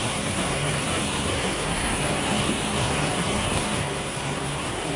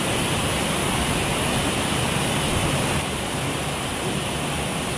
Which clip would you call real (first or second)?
second